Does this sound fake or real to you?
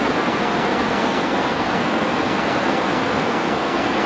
fake